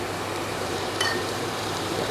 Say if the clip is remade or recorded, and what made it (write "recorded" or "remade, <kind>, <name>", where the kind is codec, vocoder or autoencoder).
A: remade, vocoder, BigVGAN v2